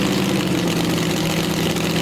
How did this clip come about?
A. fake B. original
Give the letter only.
B